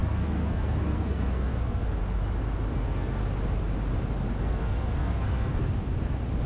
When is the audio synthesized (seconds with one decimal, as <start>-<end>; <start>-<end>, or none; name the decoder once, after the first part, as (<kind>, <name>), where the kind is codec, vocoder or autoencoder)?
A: 0.0-2.0 (codec, SNAC); 2.7-3.2; 4.4-5.6